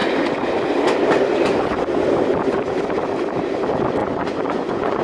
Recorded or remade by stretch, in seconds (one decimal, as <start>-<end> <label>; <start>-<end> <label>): 0.0-4.0 recorded; 4.0-5.0 remade